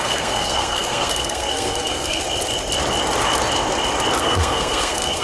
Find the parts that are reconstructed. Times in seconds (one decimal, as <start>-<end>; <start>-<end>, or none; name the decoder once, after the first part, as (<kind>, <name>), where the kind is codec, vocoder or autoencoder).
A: 0.0-2.2 (codec, SNAC); 4.2-5.2